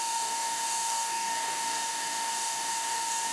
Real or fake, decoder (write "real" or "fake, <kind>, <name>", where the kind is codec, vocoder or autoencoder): fake, codec, DAC